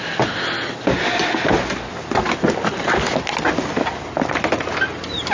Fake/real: real